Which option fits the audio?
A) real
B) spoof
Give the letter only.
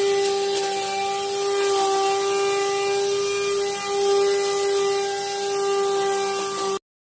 A